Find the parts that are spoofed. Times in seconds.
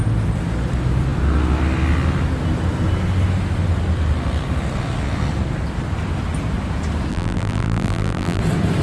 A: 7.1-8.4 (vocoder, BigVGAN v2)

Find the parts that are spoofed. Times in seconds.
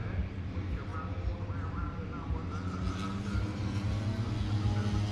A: 0.9-4.0 (vocoder, BigVGAN v2)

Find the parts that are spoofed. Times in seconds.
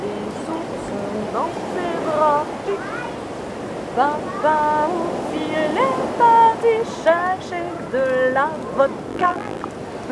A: 9.1-9.6 (vocoder, BigVGAN v2)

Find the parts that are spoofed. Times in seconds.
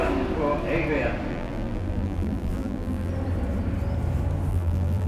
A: 1.3-3.1 (vocoder, BigVGAN v2); 4.5-5.1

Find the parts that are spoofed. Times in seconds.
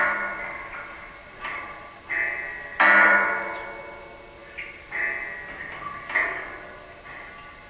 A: 1.2-2.1 (vocoder, BigVGAN v2)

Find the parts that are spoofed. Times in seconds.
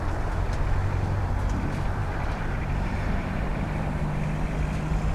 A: 0.8-1.3 (vocoder, BigVGAN v2); 2.0-4.0